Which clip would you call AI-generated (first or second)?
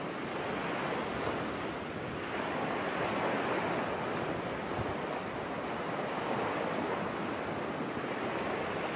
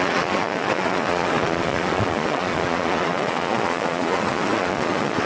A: second